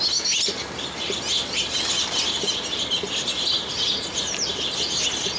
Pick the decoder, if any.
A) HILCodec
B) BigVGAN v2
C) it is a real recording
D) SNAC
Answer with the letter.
C